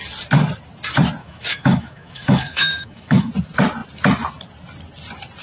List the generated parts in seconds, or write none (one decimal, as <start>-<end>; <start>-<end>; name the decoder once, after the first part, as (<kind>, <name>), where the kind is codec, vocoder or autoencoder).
1.2-3.3 (autoencoder, DAC-VAE)